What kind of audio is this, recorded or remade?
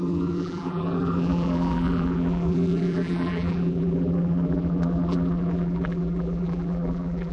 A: remade